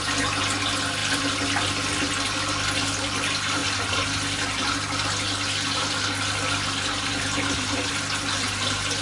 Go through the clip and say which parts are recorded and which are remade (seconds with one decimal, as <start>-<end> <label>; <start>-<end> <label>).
0.0-9.0 recorded